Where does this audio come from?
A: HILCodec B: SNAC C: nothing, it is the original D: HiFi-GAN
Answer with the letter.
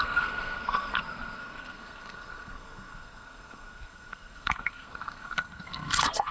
B